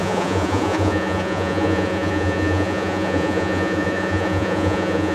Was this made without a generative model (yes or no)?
no